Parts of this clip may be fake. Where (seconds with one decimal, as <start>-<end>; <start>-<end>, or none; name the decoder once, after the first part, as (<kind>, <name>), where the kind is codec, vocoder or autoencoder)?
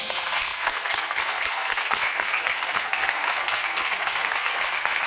0.0-5.1 (codec, SNAC)